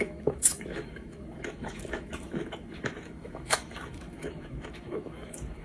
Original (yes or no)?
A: no